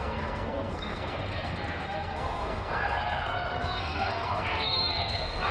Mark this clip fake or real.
fake